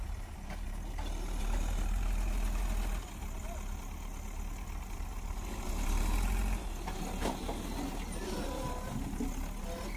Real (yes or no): yes